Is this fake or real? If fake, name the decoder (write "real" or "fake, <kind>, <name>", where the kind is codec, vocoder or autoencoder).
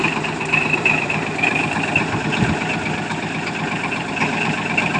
fake, vocoder, BigVGAN v2